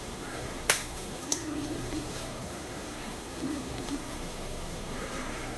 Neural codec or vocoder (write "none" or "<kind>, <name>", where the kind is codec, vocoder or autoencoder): codec, SNAC